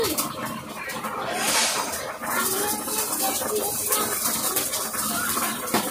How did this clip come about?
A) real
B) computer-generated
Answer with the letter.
A